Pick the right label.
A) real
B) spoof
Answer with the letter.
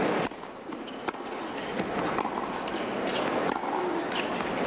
A